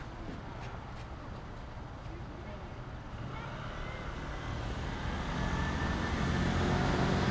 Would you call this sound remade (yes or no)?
no